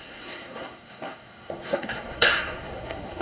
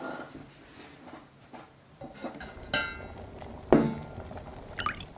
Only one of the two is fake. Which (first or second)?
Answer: first